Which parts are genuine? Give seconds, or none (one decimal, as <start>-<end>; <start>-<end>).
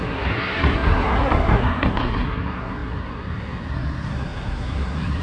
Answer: none